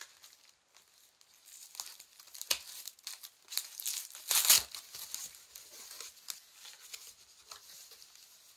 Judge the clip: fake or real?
real